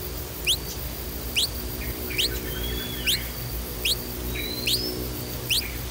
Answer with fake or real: real